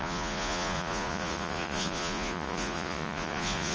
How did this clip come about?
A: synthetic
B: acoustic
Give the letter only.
A